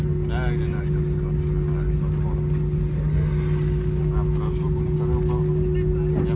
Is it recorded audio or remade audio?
recorded